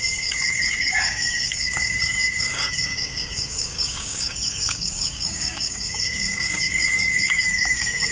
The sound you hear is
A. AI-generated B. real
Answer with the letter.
A